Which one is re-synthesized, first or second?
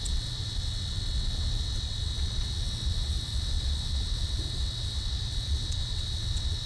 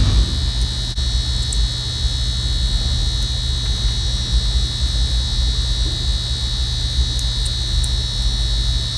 first